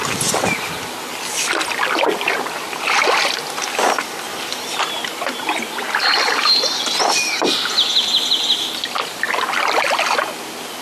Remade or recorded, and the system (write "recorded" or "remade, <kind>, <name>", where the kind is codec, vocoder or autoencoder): recorded